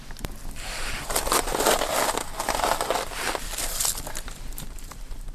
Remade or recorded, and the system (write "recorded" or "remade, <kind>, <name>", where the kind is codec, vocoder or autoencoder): recorded